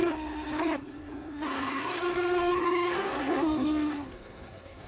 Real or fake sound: fake